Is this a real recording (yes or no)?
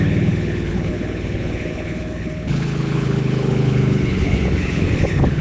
no